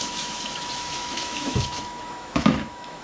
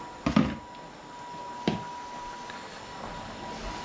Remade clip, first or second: first